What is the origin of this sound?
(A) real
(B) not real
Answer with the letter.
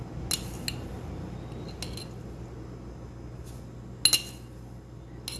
A